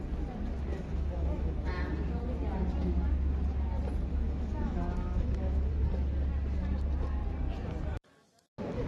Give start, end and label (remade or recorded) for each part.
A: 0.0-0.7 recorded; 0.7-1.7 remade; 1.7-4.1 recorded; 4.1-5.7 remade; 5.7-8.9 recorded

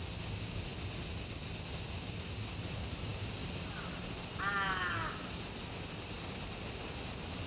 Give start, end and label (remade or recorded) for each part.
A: 0.0-7.5 recorded

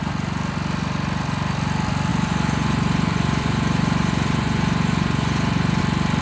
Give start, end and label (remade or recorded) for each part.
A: 0.0-2.1 recorded; 2.1-5.8 remade; 5.8-6.2 recorded

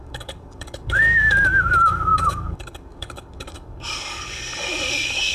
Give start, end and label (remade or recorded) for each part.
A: 0.0-5.3 remade

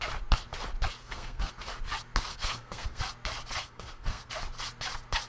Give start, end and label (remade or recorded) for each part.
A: 0.0-1.0 recorded; 1.0-1.5 remade; 1.5-2.3 recorded; 2.3-3.0 remade; 3.0-3.6 recorded; 3.6-4.3 remade; 4.3-5.3 recorded

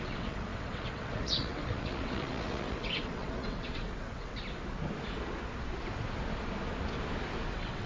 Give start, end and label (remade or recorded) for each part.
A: 0.0-4.3 remade; 4.3-7.5 recorded; 7.5-7.9 remade